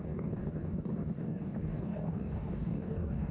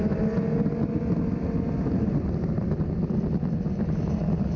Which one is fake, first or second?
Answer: first